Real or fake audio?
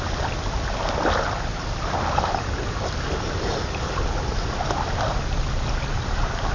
real